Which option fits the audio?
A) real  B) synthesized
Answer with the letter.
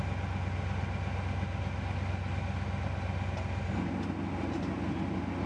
A